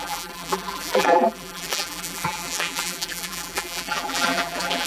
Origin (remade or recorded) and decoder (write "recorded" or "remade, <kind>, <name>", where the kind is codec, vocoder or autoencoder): remade, vocoder, BigVGAN v2